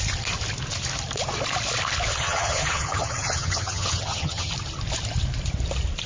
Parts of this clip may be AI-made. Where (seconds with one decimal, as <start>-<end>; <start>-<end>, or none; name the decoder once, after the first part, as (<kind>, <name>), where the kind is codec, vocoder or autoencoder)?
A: 2.1-4.5 (vocoder, HiFi-GAN)